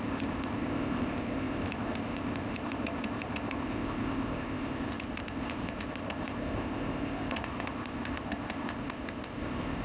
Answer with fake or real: fake